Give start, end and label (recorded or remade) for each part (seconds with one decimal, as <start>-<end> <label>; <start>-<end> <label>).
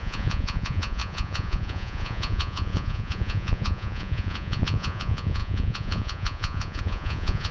0.0-7.5 remade